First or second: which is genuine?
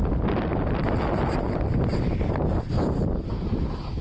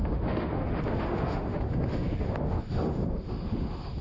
first